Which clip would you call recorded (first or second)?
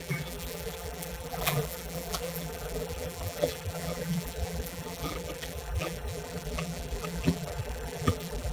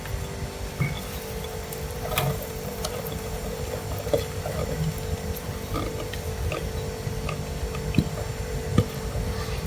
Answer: second